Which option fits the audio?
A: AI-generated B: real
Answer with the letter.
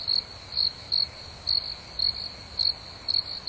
B